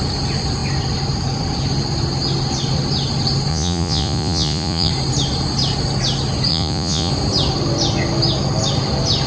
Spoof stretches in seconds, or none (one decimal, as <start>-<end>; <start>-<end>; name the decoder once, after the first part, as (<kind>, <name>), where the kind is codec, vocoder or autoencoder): 3.5-4.9 (vocoder, Vocos); 6.5-7.1